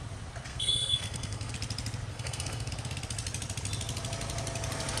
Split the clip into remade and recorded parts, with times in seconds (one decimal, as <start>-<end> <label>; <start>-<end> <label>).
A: 0.0-0.5 recorded; 0.5-1.5 remade; 1.5-2.1 recorded; 2.1-2.7 remade; 2.7-5.0 recorded